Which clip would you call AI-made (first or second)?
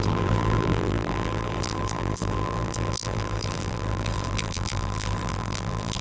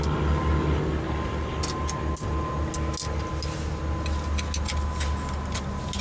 first